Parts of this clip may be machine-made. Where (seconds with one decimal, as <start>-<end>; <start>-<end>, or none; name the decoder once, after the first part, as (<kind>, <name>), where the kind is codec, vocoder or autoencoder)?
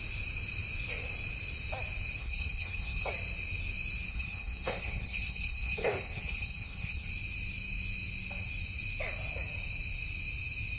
2.2-3.1 (codec, HILCodec); 4.1-7.1